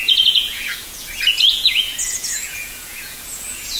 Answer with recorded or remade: remade